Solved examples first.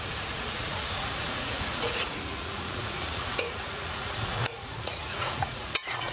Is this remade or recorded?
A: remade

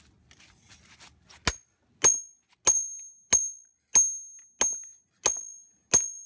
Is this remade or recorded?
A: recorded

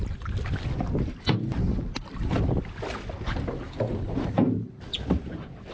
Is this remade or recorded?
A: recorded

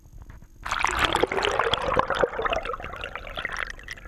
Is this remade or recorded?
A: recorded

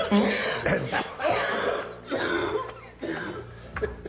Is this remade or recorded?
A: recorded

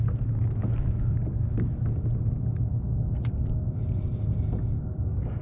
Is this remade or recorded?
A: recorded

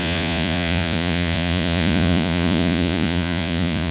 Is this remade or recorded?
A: remade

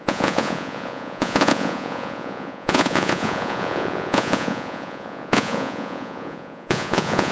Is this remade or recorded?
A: remade